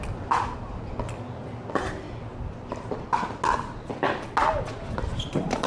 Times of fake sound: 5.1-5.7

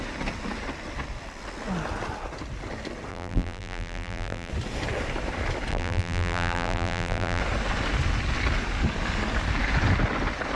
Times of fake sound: 3.1-4.5; 5.7-7.4

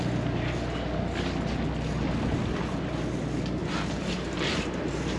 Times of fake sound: 3.6-5.2

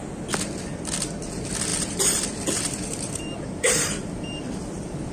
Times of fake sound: 1.7-5.1

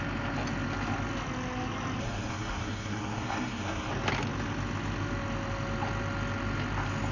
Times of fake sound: 2.0-3.9

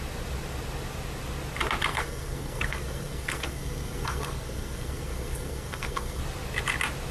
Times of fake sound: 1.9-6.2